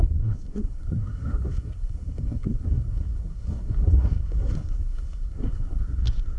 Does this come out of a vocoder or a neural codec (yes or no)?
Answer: yes